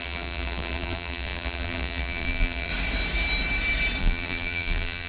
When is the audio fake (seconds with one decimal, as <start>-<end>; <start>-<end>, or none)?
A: 0.0-2.7; 4.0-5.1